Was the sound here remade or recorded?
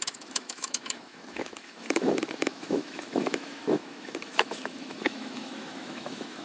remade